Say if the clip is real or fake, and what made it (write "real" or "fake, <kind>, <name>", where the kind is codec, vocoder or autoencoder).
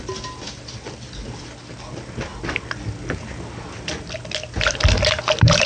real